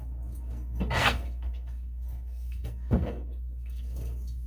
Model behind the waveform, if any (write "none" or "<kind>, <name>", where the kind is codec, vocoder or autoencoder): codec, SNAC